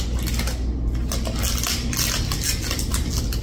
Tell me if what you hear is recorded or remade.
recorded